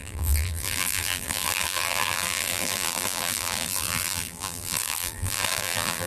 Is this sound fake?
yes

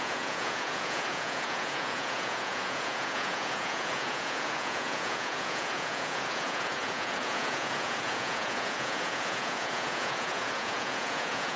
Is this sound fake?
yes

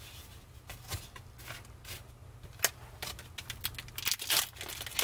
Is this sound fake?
no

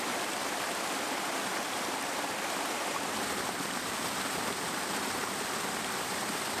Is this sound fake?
yes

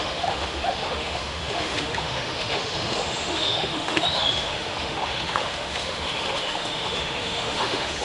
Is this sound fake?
yes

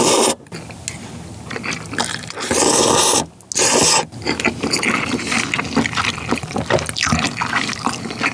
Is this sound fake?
no